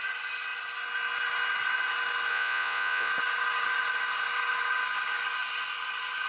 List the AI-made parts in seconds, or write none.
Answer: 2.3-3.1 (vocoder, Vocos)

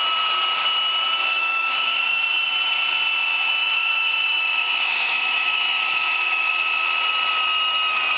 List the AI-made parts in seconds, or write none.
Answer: 1.3-2.5 (autoencoder, DAC-VAE); 3.6-6.5

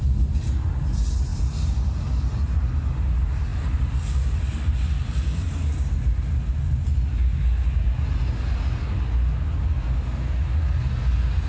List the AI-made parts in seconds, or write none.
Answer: 1.3-2.9 (vocoder, BigVGAN v2); 3.5-5.6

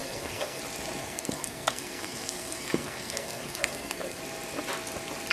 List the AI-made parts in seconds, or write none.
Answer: 0.0-0.6 (codec, SNAC); 1.0-4.2

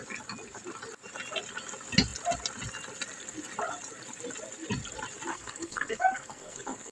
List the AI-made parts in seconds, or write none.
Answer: 5.3-6.9 (codec, SNAC)

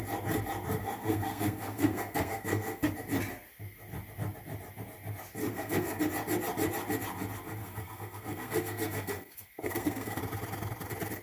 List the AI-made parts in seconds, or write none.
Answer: 0.8-2.9 (codec, SNAC); 5.4-6.0; 7.6-10.2

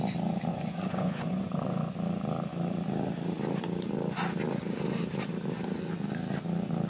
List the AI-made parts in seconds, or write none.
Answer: 0.5-1.9 (vocoder, Vocos)